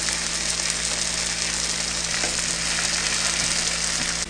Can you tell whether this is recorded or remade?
recorded